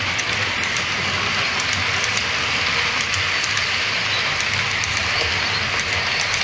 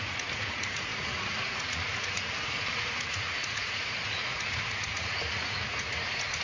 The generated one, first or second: second